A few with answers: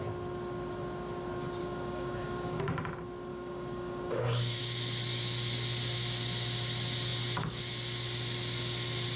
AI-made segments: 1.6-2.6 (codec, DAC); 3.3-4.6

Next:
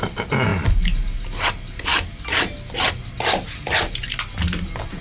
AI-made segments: none

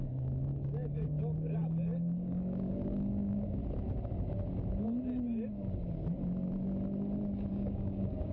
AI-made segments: 0.0-3.6 (codec, DAC); 7.5-8.3

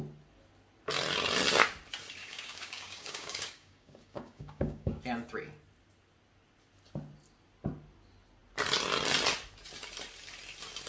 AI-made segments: 2.2-5.0 (codec, DAC)

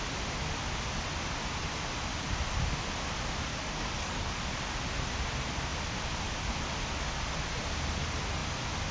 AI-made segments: 3.5-4.5 (codec, DAC)

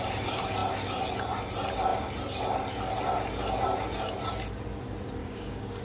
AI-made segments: 5.2-5.8 (codec, DAC)